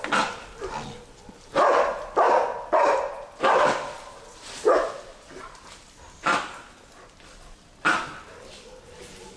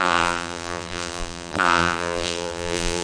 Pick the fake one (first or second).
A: second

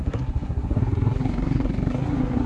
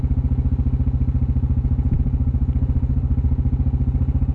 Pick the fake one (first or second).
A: first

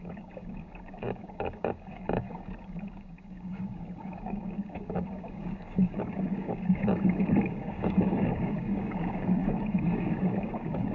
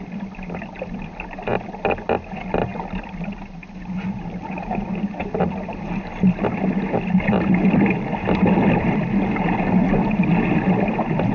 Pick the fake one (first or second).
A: first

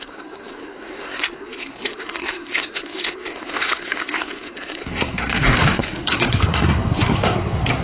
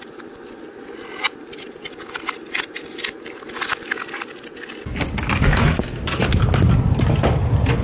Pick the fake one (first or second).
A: first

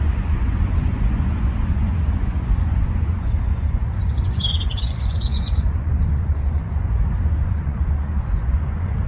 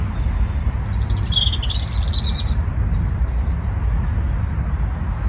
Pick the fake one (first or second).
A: first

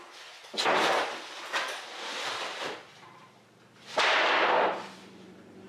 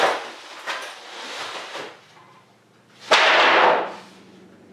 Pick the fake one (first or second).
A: first